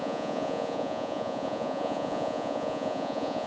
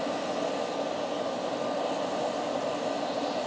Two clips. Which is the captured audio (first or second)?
second